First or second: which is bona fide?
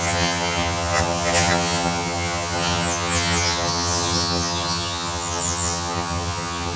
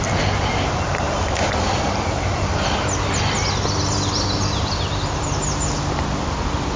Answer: second